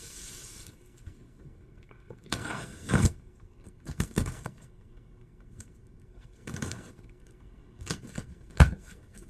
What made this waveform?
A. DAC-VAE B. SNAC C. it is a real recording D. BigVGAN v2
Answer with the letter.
B